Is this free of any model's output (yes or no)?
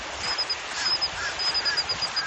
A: yes